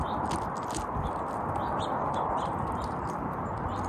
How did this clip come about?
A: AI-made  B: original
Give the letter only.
B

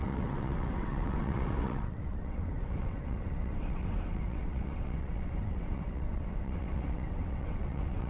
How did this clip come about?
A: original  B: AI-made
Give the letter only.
B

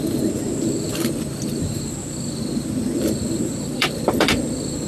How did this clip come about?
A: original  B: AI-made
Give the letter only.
B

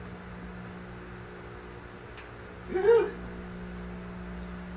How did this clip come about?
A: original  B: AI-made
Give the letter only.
A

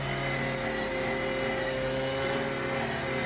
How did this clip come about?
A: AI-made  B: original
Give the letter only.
B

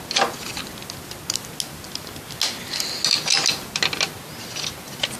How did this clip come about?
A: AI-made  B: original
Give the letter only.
B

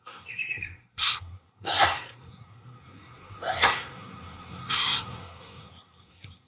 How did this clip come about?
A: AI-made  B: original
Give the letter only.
A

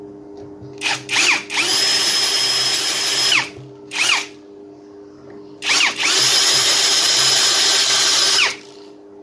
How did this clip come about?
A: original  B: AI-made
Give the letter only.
A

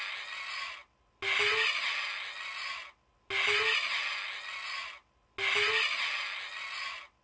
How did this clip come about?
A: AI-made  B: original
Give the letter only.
B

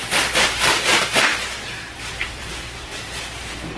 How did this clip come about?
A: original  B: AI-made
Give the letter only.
B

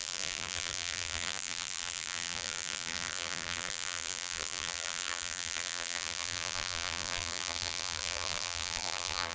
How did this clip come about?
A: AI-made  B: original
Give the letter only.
A